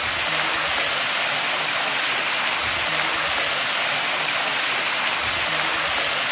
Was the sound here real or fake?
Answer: real